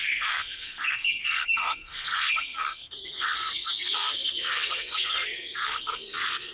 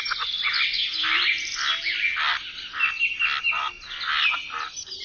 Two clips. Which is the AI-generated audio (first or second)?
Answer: first